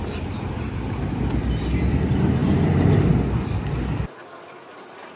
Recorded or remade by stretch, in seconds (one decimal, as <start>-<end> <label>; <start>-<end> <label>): 0.0-5.2 recorded